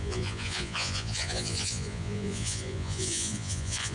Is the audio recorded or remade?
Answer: remade